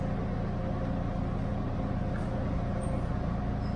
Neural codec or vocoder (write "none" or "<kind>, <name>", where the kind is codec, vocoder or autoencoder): none